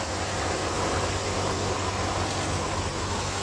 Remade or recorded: recorded